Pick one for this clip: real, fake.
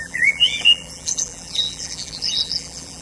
fake